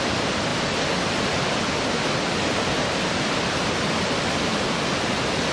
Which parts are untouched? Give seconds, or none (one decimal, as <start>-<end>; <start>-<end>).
0.5-1.0